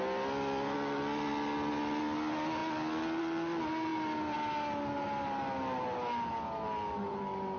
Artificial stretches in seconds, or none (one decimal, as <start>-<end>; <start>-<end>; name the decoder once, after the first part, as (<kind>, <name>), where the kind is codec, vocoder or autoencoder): none